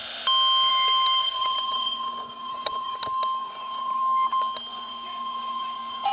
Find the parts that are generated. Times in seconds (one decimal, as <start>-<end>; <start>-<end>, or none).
1.2-3.0; 3.4-4.0; 4.7-6.1